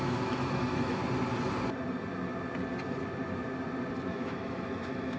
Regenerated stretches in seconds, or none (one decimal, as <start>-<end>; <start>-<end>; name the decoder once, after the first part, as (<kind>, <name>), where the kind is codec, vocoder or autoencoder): 0.0-1.0 (autoencoder, DAC-VAE); 4.1-5.2